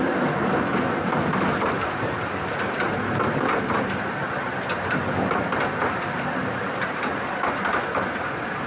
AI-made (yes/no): no